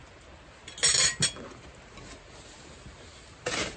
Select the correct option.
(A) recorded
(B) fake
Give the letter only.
A